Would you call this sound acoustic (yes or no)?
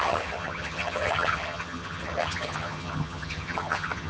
no